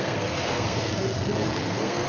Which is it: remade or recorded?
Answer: remade